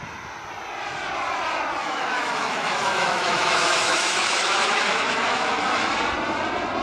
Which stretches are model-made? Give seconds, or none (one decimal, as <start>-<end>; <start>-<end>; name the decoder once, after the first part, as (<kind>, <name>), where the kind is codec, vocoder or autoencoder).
1.8-5.9 (autoencoder, DAC-VAE)